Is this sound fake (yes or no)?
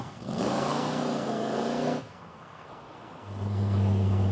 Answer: yes